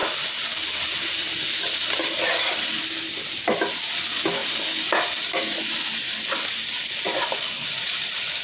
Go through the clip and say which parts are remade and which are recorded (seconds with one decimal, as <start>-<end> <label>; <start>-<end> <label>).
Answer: 0.0-4.4 recorded; 4.4-8.4 remade